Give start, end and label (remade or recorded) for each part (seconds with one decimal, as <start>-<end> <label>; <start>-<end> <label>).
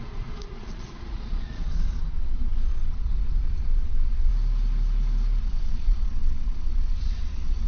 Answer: 0.0-4.3 remade; 4.3-5.4 recorded; 5.4-7.7 remade